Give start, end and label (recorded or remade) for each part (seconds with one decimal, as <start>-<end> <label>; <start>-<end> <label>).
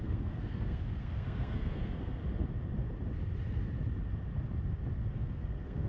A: 0.0-2.2 remade; 2.2-5.1 recorded; 5.1-5.9 remade